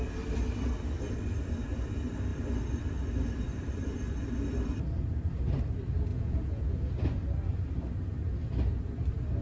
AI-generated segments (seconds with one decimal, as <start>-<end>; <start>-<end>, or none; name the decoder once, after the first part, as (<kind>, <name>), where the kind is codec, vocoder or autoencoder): 6.1-6.9 (vocoder, Vocos)